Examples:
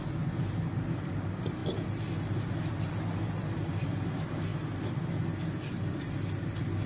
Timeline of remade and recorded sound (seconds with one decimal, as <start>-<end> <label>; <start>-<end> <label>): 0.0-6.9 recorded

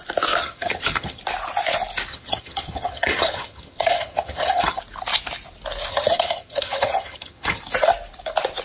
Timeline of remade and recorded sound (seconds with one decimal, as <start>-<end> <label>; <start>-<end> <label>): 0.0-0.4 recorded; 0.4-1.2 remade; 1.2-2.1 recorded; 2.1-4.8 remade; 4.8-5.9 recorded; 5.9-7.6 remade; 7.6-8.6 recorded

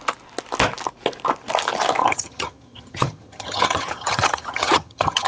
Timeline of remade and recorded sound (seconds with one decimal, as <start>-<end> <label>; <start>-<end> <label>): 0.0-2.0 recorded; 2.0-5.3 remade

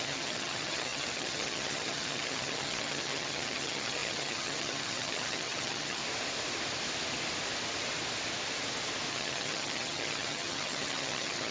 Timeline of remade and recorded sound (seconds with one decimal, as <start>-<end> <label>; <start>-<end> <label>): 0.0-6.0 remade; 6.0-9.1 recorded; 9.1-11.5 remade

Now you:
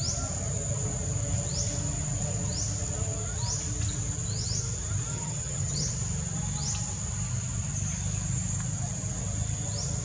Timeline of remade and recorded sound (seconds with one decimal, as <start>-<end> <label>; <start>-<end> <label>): 0.0-5.1 recorded; 5.1-5.9 remade; 5.9-10.0 recorded

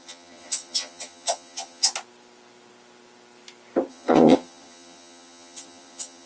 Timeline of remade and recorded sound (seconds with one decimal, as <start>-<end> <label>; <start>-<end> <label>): 0.0-1.9 remade; 1.9-3.9 recorded; 3.9-6.3 remade

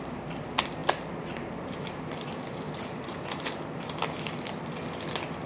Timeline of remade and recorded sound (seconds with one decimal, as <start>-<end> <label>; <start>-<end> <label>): 0.0-5.5 recorded